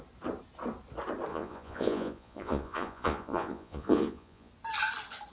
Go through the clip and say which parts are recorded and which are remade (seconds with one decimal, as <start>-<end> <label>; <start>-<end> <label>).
0.0-1.3 recorded; 1.3-4.5 remade; 4.5-5.3 recorded